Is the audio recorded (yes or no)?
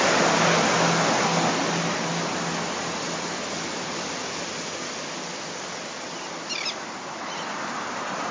yes